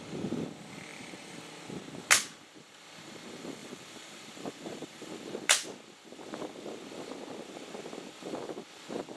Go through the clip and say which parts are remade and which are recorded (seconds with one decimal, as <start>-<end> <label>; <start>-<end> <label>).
0.0-0.9 recorded; 0.9-1.5 remade; 1.5-3.6 recorded; 3.6-5.1 remade; 5.1-9.2 recorded